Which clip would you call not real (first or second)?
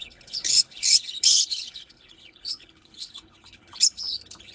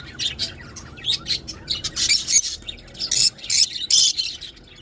first